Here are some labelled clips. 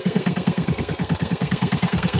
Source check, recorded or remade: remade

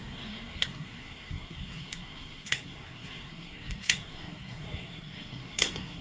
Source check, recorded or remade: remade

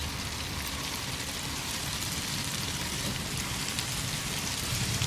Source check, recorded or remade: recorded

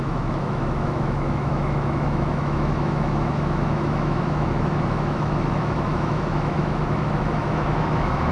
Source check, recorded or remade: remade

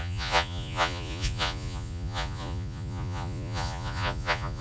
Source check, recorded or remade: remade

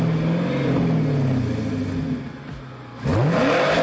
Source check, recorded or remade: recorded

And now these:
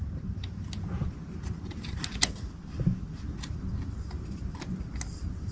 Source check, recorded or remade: recorded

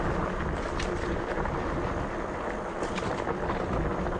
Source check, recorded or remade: recorded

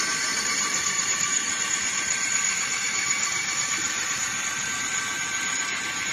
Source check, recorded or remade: remade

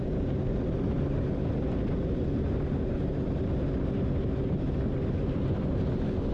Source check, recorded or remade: recorded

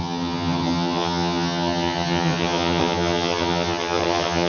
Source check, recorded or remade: remade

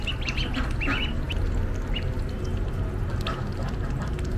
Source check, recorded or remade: recorded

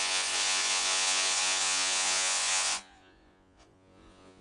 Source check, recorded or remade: remade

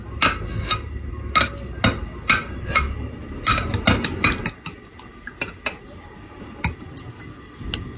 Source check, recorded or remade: recorded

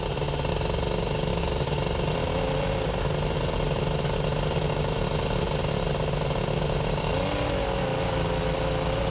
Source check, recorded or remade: recorded